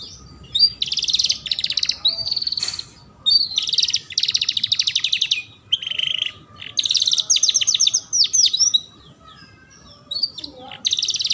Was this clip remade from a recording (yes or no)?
no